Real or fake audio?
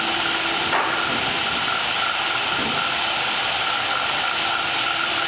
real